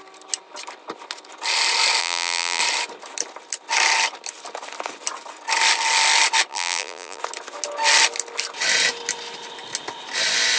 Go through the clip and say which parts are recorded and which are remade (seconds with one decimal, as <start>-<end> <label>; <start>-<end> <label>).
0.0-2.0 recorded; 2.0-2.6 remade; 2.6-6.5 recorded; 6.5-7.2 remade; 7.2-10.6 recorded